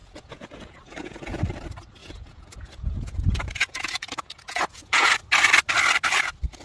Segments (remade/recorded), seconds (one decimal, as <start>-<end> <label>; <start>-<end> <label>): 0.0-1.4 remade; 1.4-2.0 recorded; 2.0-5.1 remade; 5.1-6.6 recorded